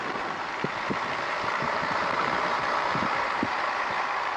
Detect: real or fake fake